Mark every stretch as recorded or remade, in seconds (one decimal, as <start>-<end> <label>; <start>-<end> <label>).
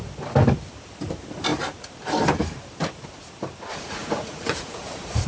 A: 0.0-3.7 recorded; 3.7-5.3 remade